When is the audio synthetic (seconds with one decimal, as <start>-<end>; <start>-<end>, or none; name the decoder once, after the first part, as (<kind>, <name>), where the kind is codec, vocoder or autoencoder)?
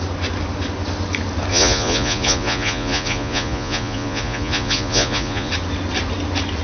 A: 1.5-5.5 (vocoder, Vocos)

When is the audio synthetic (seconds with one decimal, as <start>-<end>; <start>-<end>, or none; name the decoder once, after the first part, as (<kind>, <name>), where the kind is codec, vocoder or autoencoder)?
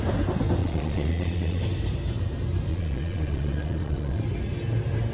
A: 0.6-1.6 (vocoder, Vocos); 2.7-4.2